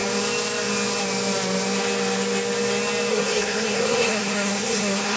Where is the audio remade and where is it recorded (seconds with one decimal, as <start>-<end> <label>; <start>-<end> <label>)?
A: 0.0-3.1 recorded; 3.1-5.2 remade